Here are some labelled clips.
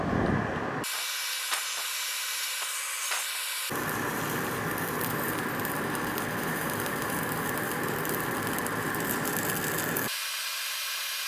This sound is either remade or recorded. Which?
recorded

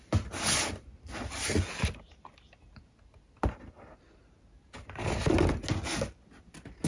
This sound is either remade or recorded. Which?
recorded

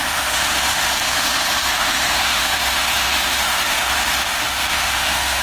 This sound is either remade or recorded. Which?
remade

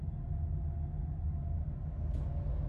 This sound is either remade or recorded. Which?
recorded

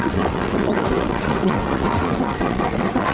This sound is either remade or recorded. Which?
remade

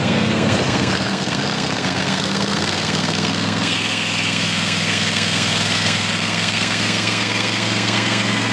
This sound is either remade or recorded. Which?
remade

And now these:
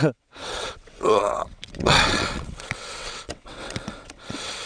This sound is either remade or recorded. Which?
remade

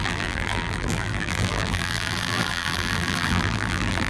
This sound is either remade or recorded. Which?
remade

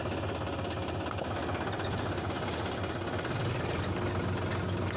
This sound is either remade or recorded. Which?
recorded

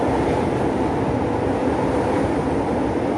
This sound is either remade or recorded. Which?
recorded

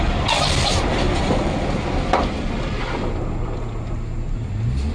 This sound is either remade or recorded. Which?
recorded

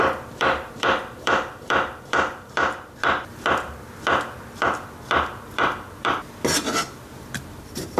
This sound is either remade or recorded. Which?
remade